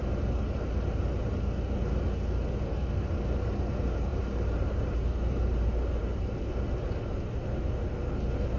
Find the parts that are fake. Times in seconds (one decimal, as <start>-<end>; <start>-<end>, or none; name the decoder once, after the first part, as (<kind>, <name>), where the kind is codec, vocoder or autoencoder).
0.0-3.5 (vocoder, BigVGAN v2); 4.1-6.5